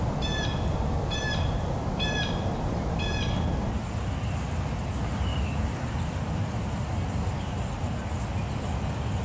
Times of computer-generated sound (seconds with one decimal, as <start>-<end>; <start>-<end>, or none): 5.3-6.9

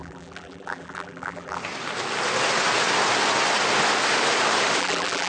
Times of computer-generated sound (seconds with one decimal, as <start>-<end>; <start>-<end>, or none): 0.0-1.6; 4.8-5.3

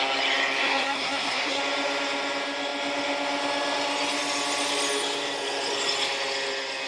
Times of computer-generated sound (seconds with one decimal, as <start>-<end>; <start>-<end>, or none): 0.6-1.6